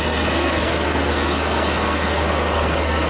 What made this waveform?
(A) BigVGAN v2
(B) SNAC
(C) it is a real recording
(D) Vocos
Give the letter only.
B